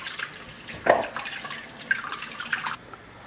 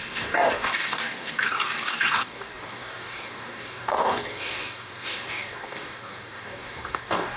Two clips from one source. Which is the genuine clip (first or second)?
first